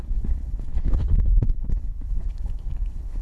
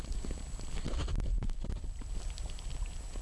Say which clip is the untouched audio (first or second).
second